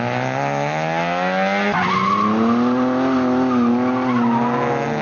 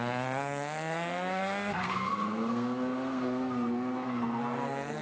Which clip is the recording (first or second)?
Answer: first